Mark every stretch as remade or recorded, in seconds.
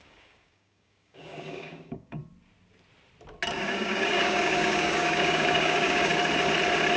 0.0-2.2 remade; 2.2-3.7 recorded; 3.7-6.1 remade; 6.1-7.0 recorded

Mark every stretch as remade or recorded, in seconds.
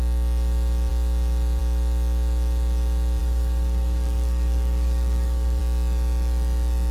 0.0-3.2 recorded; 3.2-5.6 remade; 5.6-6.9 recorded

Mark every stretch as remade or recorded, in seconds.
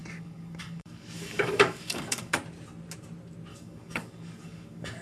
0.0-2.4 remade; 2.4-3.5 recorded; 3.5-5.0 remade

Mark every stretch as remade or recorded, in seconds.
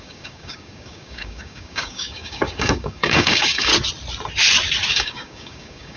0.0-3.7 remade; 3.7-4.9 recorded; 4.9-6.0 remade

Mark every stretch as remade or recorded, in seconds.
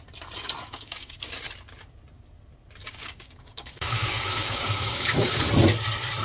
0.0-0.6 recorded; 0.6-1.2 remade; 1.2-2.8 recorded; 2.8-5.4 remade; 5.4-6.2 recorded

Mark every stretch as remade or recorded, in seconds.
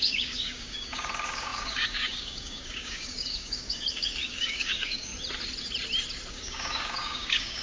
0.0-5.1 remade; 5.1-6.3 recorded; 6.3-7.6 remade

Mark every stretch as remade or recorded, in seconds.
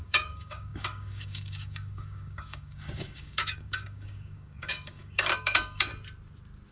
0.0-5.9 remade; 5.9-6.7 recorded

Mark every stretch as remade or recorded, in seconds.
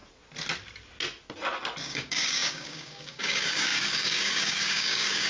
0.0-1.8 recorded; 1.8-5.3 remade